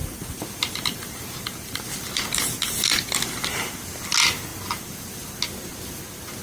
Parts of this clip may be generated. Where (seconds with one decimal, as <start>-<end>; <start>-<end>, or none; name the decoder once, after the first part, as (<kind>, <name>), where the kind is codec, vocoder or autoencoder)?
0.0-3.8 (vocoder, BigVGAN v2); 4.5-5.3